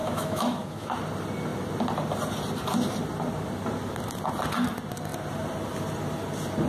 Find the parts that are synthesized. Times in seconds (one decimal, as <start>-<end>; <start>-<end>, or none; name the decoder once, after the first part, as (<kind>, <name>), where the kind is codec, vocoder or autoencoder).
0.0-0.9 (autoencoder, DAC-VAE)

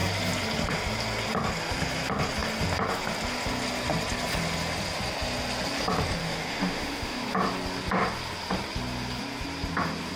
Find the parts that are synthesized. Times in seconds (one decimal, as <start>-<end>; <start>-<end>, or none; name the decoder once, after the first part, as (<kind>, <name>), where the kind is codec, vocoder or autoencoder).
6.2-7.2 (autoencoder, DAC-VAE)

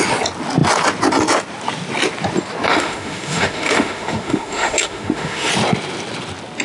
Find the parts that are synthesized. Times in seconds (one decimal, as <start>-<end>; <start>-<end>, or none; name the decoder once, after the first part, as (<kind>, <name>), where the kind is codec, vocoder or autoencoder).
2.7-5.5 (autoencoder, DAC-VAE)

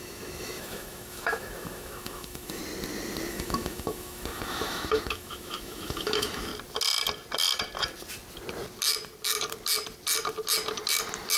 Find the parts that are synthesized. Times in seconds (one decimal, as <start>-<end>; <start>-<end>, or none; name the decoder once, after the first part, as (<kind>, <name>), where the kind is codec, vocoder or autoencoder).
0.0-2.6 (autoencoder, DAC-VAE); 3.3-6.5

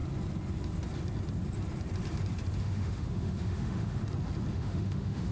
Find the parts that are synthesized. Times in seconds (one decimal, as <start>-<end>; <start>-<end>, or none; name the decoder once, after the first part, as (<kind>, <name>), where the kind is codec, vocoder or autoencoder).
2.6-4.0 (autoencoder, DAC-VAE); 4.5-5.3

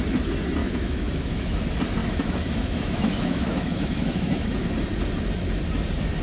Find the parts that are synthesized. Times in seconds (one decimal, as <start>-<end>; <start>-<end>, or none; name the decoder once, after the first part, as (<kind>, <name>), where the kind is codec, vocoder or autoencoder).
0.6-1.6 (autoencoder, DAC-VAE); 2.0-4.7